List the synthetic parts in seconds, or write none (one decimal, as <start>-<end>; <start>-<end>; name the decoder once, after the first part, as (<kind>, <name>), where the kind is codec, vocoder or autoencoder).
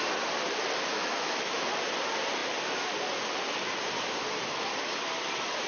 0.9-1.6 (autoencoder, DAC-VAE)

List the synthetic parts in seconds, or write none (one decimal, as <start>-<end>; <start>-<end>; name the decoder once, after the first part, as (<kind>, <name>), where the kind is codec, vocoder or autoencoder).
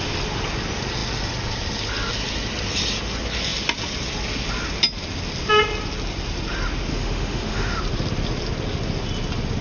6.9-7.8 (autoencoder, DAC-VAE)